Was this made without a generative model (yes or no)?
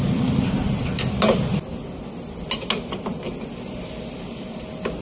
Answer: yes